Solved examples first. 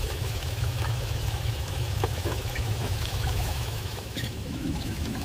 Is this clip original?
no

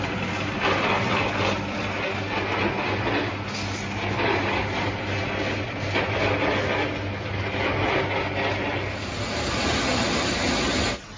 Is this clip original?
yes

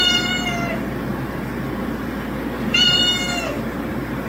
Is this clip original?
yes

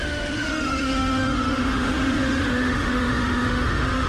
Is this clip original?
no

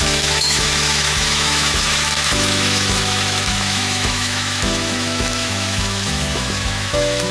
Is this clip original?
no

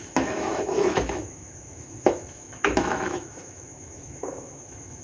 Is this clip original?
no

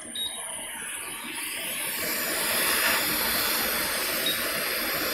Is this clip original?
yes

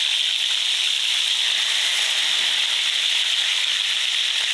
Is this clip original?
yes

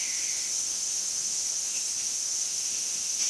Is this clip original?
no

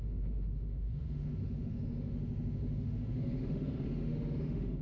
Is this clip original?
no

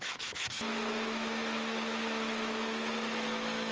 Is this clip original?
no